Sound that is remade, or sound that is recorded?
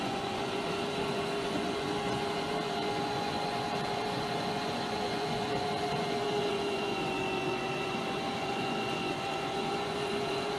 remade